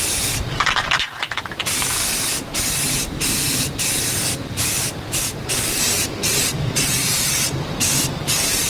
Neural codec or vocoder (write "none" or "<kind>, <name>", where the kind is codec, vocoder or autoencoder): vocoder, BigVGAN v2